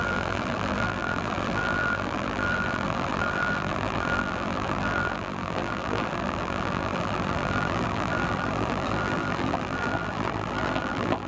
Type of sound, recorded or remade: remade